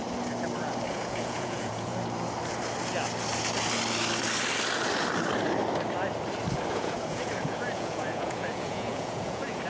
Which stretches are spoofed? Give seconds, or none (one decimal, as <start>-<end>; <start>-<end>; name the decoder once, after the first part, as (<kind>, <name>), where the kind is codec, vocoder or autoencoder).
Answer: 0.9-1.9 (vocoder, Vocos); 6.7-9.7